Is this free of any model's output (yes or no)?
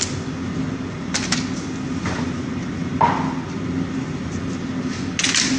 yes